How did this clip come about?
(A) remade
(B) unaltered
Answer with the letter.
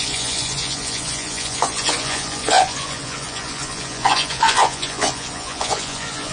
A